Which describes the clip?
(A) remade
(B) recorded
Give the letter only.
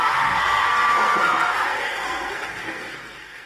A